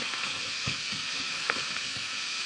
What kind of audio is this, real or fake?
fake